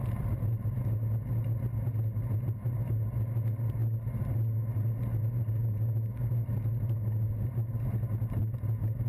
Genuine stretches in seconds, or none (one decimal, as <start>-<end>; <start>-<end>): 0.0-9.1